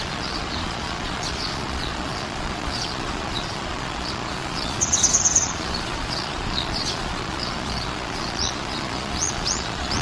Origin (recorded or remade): remade